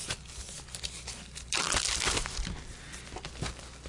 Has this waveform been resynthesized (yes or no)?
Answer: no